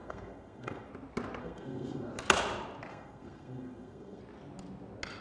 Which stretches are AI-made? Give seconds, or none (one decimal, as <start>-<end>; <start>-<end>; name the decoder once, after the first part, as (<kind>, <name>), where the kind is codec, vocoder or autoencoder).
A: 0.0-0.9 (codec, SNAC); 1.4-2.1; 2.9-4.2